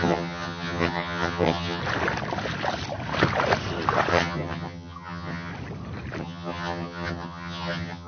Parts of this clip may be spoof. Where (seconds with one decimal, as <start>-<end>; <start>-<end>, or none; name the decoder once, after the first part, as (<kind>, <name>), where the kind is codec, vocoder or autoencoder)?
0.0-1.8 (vocoder, HiFi-GAN); 4.1-5.5; 6.2-8.1